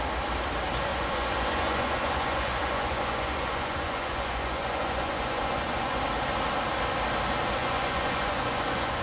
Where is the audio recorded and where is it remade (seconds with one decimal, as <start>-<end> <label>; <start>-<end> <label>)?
0.0-0.9 recorded; 0.9-6.0 remade; 6.0-7.6 recorded; 7.6-9.0 remade